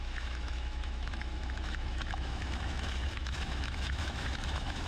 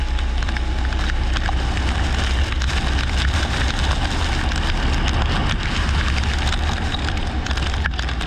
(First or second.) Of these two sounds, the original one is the second